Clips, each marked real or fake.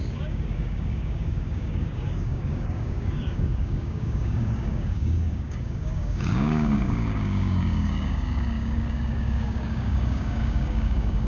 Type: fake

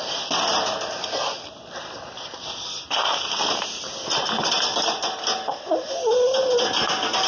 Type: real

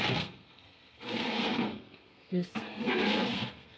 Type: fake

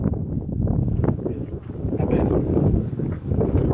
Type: fake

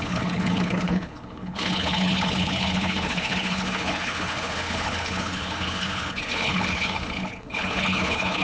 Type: fake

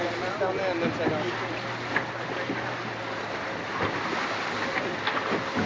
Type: real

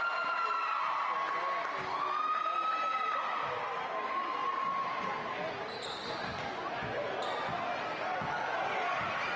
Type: real